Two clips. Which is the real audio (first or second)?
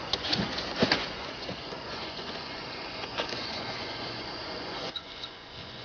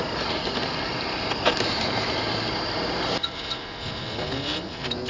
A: second